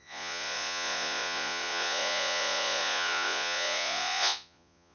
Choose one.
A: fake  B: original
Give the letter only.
A